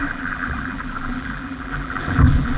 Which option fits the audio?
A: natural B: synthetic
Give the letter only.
B